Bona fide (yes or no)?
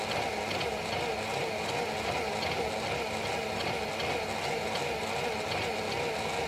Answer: yes